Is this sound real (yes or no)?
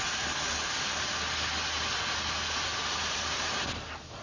yes